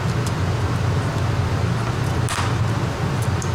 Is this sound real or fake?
real